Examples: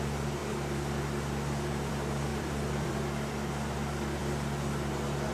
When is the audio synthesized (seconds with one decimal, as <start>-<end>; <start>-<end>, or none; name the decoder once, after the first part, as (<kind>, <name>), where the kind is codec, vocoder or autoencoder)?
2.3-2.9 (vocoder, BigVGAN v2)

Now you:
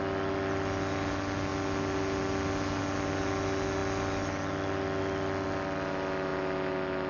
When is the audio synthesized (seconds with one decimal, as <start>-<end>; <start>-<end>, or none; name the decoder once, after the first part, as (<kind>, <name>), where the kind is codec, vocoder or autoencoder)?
none

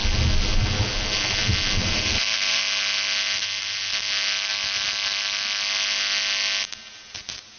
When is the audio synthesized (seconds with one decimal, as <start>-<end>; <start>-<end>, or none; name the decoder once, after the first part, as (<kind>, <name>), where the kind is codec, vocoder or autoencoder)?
1.8-2.6 (vocoder, BigVGAN v2)